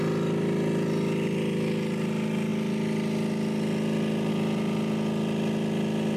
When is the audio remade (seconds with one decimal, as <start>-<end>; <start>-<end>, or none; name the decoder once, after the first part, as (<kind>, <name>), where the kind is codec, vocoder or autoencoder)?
none